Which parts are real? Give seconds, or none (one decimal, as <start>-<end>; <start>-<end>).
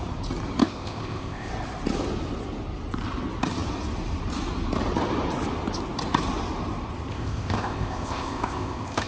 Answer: 0.0-0.6; 1.5-7.1